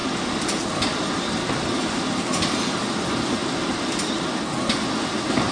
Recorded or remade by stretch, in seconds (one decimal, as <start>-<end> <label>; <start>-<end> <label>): 0.0-5.5 recorded